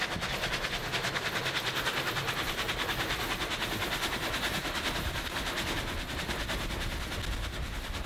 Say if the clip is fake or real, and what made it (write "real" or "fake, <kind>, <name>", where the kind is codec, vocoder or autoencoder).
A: real